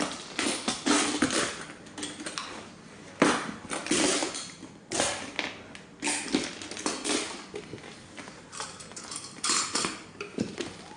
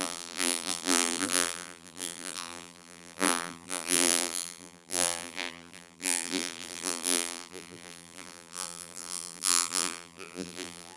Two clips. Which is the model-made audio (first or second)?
second